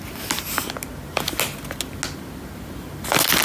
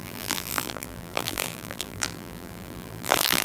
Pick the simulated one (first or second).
second